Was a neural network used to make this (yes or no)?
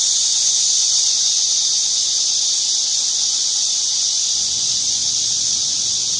yes